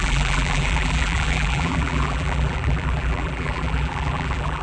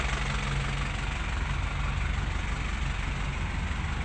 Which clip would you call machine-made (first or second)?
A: first